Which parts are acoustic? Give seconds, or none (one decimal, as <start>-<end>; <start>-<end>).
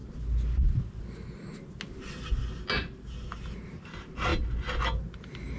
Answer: 0.0-5.6